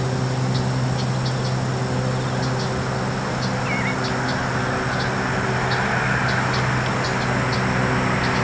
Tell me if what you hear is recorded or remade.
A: recorded